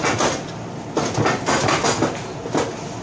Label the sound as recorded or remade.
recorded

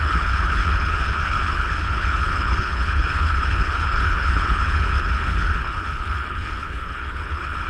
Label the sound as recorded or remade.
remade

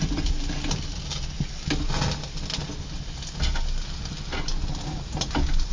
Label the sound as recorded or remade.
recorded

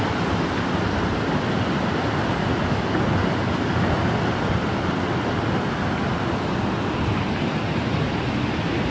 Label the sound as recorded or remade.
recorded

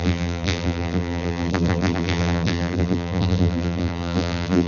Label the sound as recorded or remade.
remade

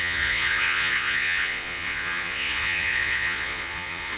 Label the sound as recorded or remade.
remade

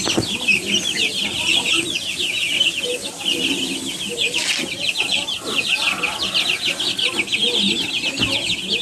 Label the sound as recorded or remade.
recorded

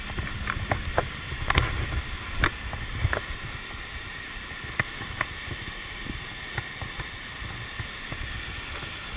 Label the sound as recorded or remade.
recorded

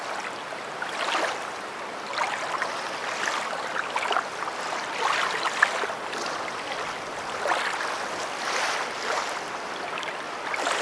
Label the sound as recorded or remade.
recorded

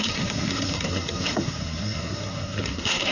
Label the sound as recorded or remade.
remade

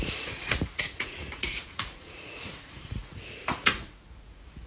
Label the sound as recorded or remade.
remade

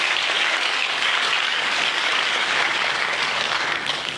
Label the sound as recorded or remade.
remade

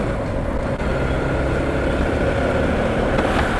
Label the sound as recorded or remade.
recorded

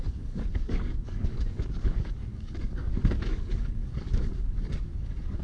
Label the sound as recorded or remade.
remade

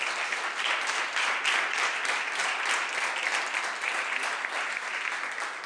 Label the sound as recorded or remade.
recorded